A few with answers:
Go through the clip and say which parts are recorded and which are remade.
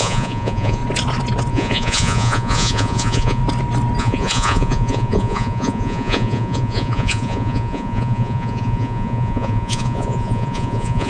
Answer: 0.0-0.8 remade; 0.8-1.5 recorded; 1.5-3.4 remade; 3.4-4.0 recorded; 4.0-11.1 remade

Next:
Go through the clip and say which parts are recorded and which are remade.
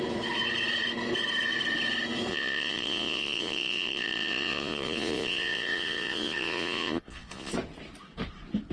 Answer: 0.0-2.3 recorded; 2.3-7.5 remade; 7.5-8.7 recorded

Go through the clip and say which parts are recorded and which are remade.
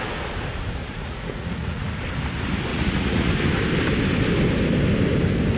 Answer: 0.0-0.8 recorded; 0.8-1.9 remade; 1.9-2.7 recorded; 2.7-3.3 remade; 3.3-5.6 recorded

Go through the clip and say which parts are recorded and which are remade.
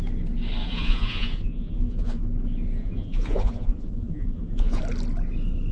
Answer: 0.0-0.6 recorded; 0.6-2.2 remade; 2.2-2.8 recorded; 2.8-4.8 remade; 4.8-5.7 recorded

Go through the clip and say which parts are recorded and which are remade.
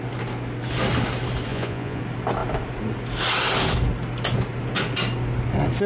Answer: 0.0-1.5 recorded; 1.5-2.0 remade; 2.0-5.9 recorded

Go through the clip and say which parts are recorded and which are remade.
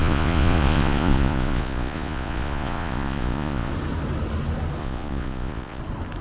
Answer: 0.0-3.7 remade; 3.7-4.8 recorded; 4.8-5.8 remade; 5.8-6.2 recorded